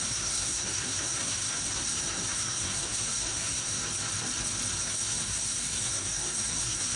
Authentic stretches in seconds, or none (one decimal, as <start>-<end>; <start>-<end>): 3.8-4.8